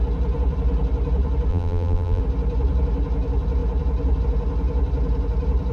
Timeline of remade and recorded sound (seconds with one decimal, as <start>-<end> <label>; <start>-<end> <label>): 0.0-1.5 recorded; 1.5-2.2 remade; 2.2-5.7 recorded